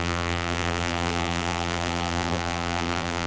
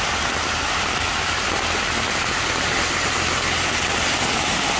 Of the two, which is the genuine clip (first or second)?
second